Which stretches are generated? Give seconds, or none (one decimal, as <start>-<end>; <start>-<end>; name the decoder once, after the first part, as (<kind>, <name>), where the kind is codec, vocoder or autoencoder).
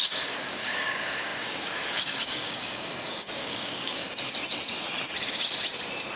0.0-4.0 (codec, DAC)